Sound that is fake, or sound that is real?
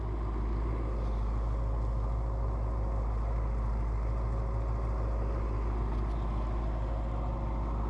real